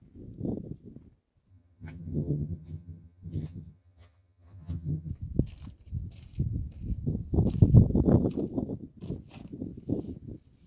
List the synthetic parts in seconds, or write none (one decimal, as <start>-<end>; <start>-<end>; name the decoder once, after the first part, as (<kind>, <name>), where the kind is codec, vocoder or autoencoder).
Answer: 1.5-5.1 (vocoder, HiFi-GAN)